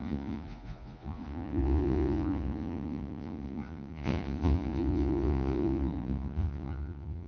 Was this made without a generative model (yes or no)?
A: no